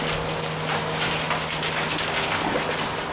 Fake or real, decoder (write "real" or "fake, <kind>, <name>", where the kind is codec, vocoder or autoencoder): real